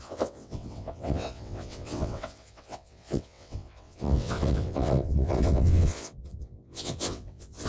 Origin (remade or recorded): remade